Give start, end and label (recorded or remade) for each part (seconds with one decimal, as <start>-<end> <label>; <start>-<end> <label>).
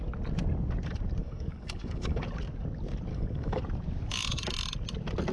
0.0-1.2 recorded; 1.2-2.2 remade; 2.2-3.1 recorded; 3.1-3.6 remade; 3.6-5.3 recorded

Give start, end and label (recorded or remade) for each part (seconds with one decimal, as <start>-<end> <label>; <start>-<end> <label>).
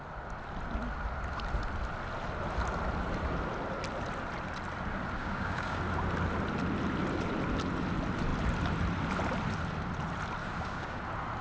0.0-5.2 recorded; 5.2-5.8 remade; 5.8-10.4 recorded; 10.4-11.0 remade; 11.0-11.4 recorded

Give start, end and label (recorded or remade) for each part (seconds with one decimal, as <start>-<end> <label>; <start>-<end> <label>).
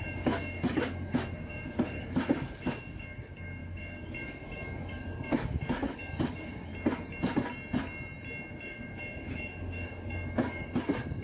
0.0-6.7 remade; 6.7-8.5 recorded; 8.5-11.2 remade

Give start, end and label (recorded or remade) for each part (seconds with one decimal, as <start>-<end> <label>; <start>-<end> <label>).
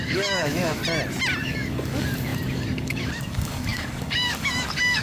0.0-0.8 remade; 0.8-1.4 recorded; 1.4-5.0 remade